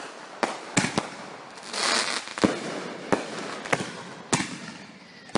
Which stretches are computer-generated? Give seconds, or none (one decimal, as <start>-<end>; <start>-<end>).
none